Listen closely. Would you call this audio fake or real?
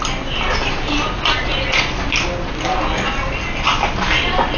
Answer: real